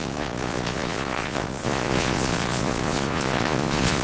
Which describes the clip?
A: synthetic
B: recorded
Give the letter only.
A